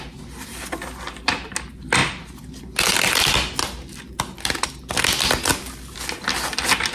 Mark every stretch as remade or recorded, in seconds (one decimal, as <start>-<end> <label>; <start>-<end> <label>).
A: 0.0-6.9 recorded